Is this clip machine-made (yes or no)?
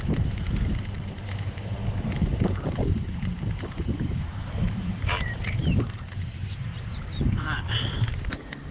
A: yes